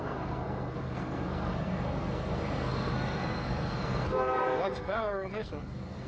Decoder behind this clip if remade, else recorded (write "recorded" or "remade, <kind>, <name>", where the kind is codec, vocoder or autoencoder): remade, codec, SNAC